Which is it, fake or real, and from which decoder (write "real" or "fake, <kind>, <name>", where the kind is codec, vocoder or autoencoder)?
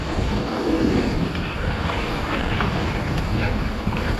fake, codec, DAC